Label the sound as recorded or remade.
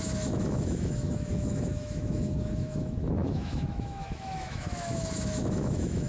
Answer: remade